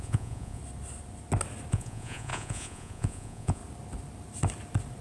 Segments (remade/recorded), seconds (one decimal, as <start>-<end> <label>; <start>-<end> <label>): 0.0-0.6 remade; 0.6-1.7 recorded; 1.7-3.6 remade; 3.6-5.0 recorded